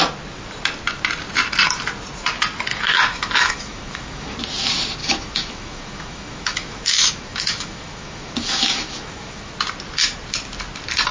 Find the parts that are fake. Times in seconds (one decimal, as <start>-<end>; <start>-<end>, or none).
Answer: 2.7-4.4; 5.0-9.5